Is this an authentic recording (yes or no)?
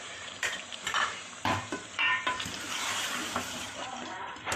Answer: no